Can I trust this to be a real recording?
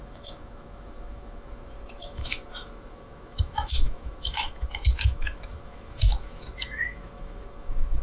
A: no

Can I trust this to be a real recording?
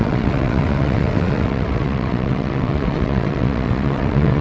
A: no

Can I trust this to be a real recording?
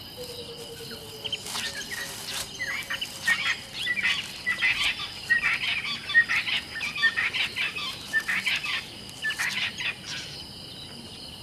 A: yes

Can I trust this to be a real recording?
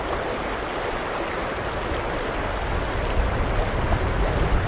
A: yes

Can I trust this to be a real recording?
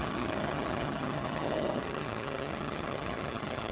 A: no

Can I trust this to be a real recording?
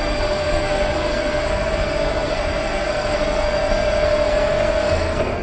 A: no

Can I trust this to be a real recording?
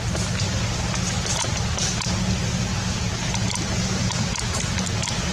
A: yes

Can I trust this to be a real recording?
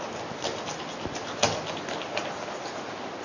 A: yes